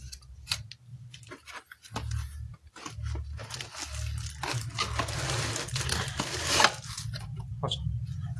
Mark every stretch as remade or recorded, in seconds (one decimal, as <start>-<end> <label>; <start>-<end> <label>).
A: 0.0-8.4 recorded